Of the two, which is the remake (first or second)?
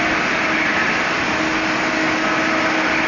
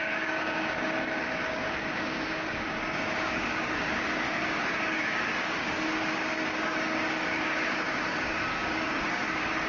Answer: second